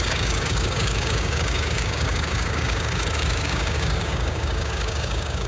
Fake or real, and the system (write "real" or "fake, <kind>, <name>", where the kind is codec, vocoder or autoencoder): fake, codec, DAC